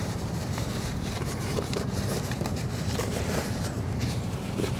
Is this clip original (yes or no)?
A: no